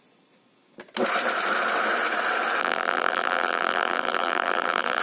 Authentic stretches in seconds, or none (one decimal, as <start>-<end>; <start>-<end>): 0.0-2.6